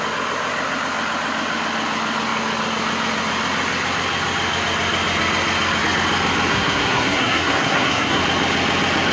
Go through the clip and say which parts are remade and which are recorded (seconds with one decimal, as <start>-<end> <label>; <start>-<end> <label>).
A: 0.0-6.5 recorded; 6.5-8.2 remade; 8.2-9.1 recorded

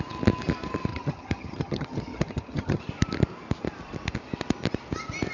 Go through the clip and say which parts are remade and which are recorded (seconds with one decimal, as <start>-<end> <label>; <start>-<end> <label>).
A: 0.0-0.9 recorded; 0.9-2.8 remade; 2.8-5.3 recorded

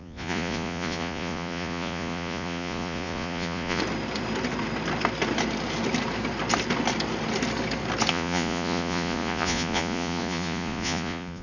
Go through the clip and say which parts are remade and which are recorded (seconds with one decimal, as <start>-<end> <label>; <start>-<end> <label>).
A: 0.0-3.8 remade; 3.8-8.1 recorded; 8.1-11.4 remade

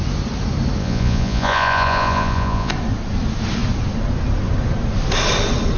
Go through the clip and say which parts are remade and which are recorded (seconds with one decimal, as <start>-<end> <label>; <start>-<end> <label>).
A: 0.0-0.8 recorded; 0.8-2.7 remade; 2.7-5.8 recorded

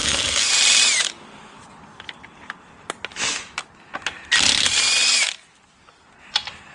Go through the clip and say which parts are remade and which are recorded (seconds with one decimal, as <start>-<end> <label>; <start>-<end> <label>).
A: 0.0-0.5 remade; 0.5-6.7 recorded

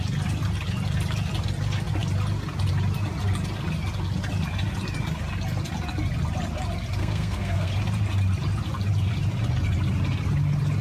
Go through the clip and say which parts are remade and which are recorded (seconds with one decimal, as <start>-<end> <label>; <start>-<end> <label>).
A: 0.0-7.0 recorded; 7.0-7.7 remade; 7.7-10.8 recorded